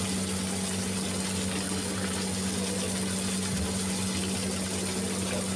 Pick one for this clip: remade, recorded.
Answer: recorded